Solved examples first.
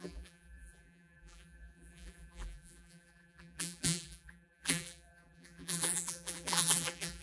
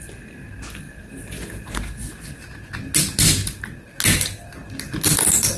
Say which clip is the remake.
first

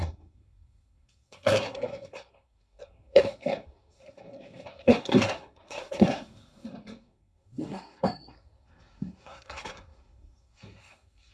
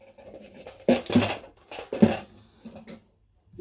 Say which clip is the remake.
first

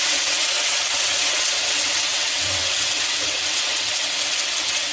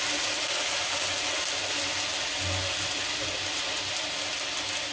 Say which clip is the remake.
first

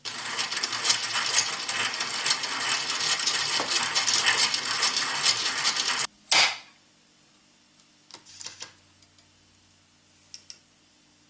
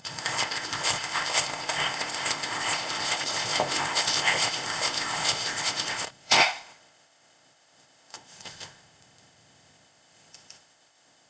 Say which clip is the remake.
second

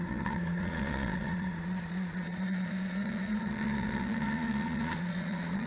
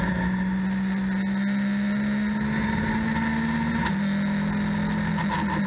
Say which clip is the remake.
first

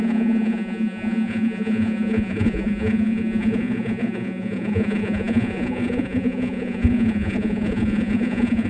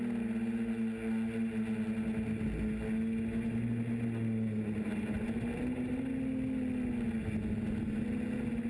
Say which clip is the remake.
first